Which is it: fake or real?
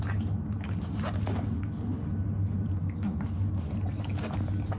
real